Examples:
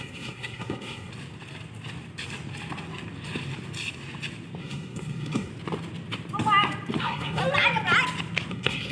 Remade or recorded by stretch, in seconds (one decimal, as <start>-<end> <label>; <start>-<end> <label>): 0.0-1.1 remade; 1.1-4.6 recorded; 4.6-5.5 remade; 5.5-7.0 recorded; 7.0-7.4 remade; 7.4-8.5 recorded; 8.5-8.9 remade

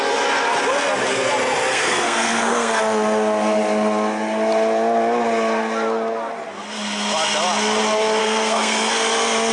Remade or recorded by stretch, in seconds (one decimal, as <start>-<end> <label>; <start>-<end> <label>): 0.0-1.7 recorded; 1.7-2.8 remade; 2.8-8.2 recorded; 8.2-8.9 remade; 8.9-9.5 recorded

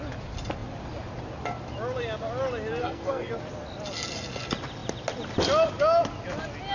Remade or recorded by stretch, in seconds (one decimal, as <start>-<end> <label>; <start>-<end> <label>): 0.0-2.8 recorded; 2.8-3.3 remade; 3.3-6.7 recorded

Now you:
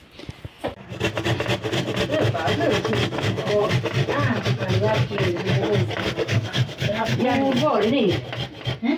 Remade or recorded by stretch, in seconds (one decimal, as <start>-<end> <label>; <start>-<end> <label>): 0.0-3.0 recorded; 3.0-3.7 remade; 3.7-6.0 recorded; 6.0-7.2 remade; 7.2-9.0 recorded

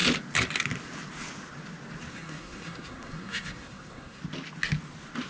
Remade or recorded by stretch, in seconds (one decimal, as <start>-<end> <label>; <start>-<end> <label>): 0.0-2.1 recorded; 2.1-4.2 remade; 4.2-5.3 recorded